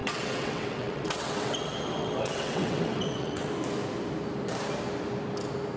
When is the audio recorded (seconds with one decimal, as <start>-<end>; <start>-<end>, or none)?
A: 3.5-5.8